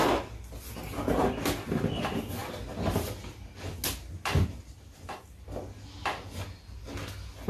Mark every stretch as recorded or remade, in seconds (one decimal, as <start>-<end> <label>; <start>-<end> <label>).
0.0-7.5 recorded